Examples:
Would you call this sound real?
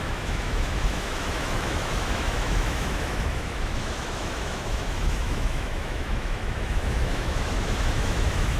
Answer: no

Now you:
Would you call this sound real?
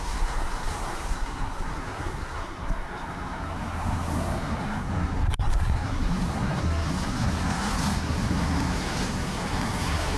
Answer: no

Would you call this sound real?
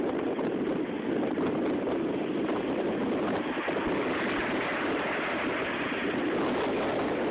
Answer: yes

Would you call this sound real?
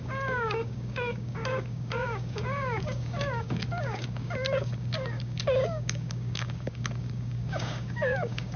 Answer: no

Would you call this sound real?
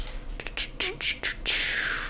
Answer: yes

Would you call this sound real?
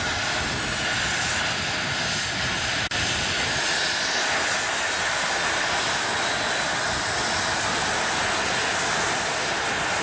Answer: yes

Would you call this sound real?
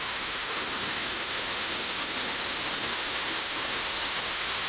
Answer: no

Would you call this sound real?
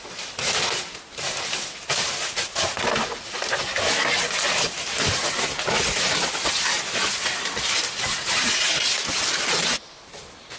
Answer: yes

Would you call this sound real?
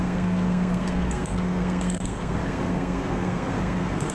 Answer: no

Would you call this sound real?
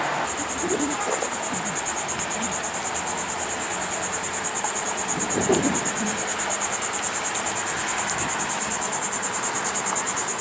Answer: yes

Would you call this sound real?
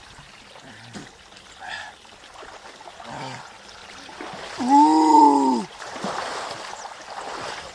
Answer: yes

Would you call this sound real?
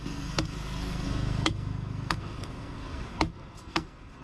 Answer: no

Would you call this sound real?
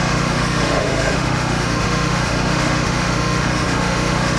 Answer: no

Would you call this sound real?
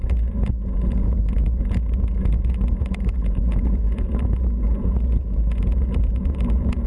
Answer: no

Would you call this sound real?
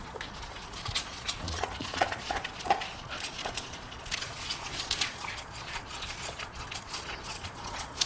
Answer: no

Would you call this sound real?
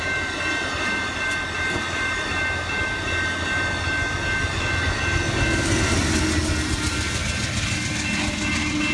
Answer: yes